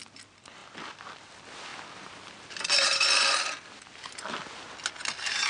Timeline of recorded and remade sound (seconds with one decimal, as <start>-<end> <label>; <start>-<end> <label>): 0.0-5.5 recorded